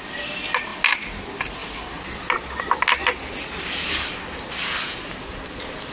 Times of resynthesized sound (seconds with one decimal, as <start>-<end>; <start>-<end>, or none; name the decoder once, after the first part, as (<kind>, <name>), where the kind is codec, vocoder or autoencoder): none